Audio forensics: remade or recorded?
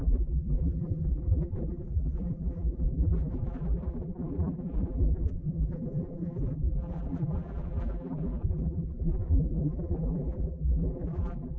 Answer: remade